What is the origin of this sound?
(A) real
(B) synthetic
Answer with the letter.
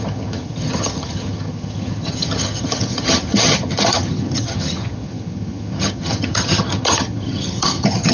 B